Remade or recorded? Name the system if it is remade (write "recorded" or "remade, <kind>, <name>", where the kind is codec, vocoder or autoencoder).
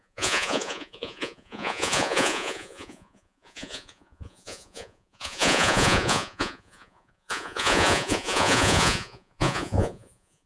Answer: remade, vocoder, Vocos